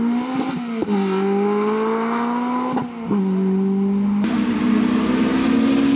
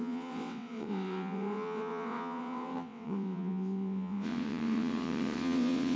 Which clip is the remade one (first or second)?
second